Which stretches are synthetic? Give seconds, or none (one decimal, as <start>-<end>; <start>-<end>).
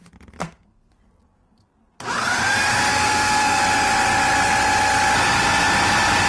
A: 0.4-0.9; 2.9-3.6